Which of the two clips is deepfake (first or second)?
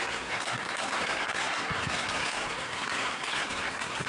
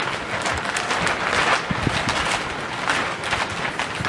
first